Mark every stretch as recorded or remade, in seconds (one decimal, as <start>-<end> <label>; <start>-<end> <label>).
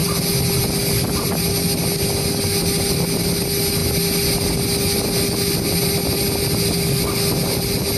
0.0-8.0 recorded